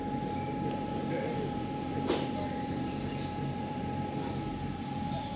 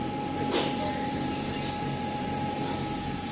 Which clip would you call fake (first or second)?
first